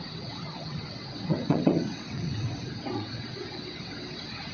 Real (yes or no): no